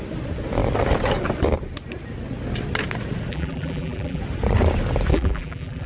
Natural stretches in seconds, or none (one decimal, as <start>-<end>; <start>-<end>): 0.0-3.3; 4.2-5.1